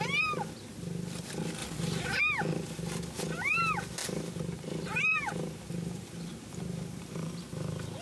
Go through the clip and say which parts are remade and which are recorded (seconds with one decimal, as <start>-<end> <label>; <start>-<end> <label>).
0.0-1.6 recorded; 1.6-2.2 remade; 2.2-4.0 recorded; 4.0-7.4 remade; 7.4-8.0 recorded